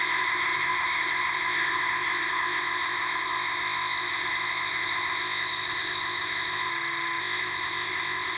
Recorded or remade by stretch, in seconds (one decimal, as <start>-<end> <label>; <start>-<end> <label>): 0.0-6.7 remade; 6.7-7.2 recorded; 7.2-8.4 remade